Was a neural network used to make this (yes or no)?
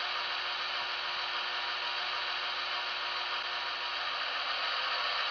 no